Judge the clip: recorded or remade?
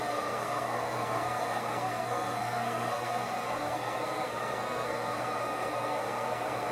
remade